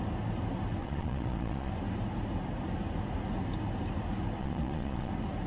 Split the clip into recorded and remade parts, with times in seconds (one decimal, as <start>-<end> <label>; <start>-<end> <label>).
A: 0.0-0.8 recorded; 0.8-1.7 remade; 1.7-4.4 recorded; 4.4-5.1 remade; 5.1-5.5 recorded